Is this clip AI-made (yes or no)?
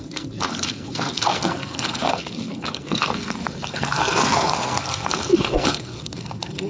yes